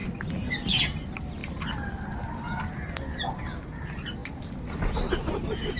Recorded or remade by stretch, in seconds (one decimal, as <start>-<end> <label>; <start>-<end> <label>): 0.0-5.8 recorded

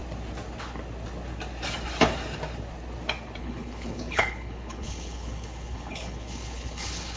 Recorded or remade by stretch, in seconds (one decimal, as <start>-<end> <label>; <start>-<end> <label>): 0.0-3.4 recorded; 3.4-7.2 remade

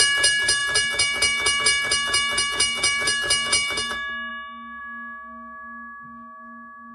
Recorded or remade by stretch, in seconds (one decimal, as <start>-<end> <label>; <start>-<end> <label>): 0.0-6.9 recorded

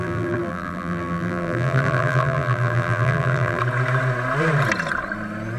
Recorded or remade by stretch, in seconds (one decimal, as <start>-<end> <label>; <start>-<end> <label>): 0.0-3.6 remade; 3.6-5.6 recorded

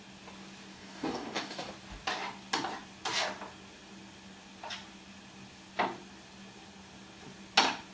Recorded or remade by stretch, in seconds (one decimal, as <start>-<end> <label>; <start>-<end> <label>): 0.0-0.7 recorded; 0.7-1.7 remade; 1.7-7.9 recorded